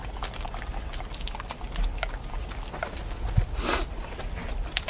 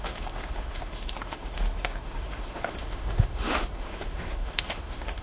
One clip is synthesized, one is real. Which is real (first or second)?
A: first